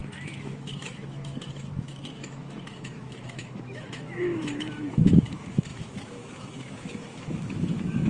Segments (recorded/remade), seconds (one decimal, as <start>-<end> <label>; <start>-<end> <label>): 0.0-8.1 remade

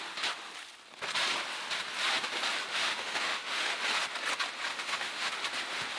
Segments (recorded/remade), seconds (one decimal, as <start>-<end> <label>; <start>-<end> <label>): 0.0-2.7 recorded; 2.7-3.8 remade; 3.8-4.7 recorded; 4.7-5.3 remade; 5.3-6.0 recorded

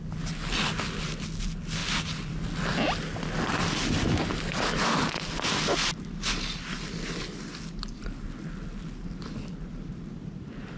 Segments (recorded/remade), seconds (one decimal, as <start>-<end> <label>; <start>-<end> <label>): 0.0-10.8 recorded